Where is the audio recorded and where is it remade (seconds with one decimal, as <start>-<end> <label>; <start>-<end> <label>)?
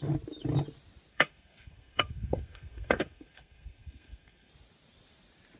0.0-1.1 recorded; 1.1-4.5 remade; 4.5-5.6 recorded